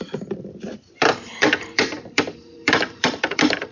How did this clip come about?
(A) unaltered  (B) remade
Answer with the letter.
B